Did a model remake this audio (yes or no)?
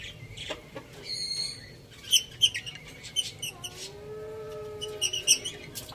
no